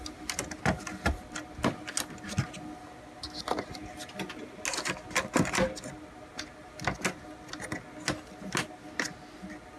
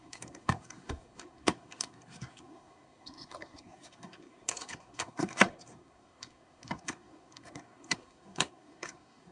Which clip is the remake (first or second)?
second